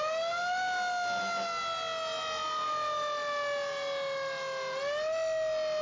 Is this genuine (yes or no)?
yes